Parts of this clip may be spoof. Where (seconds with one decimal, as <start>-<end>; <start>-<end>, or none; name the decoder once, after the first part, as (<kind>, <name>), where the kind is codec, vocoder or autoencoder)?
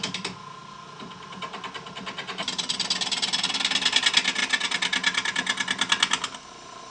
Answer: 0.6-4.0 (vocoder, BigVGAN v2)